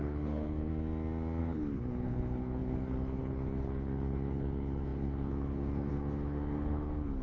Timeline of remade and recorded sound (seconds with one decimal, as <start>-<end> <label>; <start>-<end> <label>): 0.0-0.7 remade; 0.7-1.4 recorded; 1.4-7.2 remade